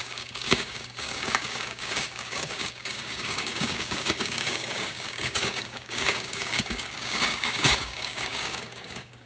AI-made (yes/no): yes